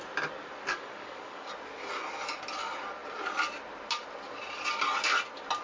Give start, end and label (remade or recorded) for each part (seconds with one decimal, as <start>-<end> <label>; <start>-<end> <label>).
0.0-0.7 recorded; 0.7-1.5 remade; 1.5-5.6 recorded